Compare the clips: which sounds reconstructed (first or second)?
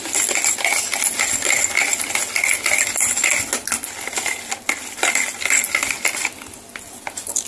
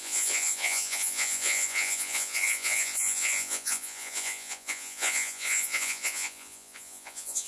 second